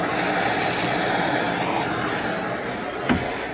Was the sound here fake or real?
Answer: real